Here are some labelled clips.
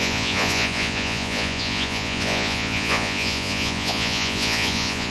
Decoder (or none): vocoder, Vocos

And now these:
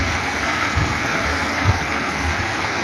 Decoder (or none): codec, SNAC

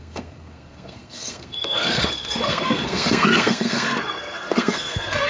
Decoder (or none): codec, SNAC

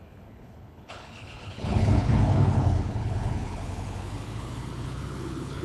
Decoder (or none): codec, HILCodec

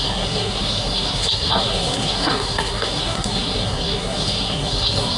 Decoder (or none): codec, SNAC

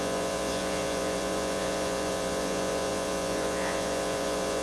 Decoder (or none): vocoder, Vocos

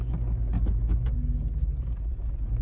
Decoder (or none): none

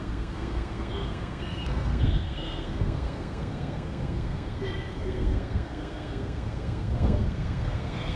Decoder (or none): codec, SNAC